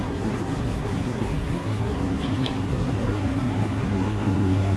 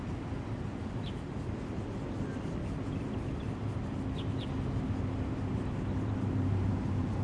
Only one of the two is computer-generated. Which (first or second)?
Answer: first